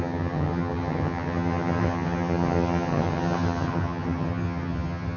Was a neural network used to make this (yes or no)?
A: yes